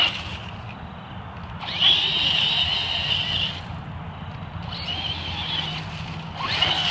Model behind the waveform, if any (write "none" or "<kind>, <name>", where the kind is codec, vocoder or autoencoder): none